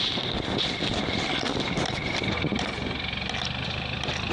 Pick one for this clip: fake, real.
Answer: real